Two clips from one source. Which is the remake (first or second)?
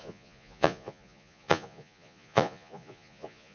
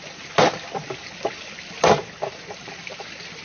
first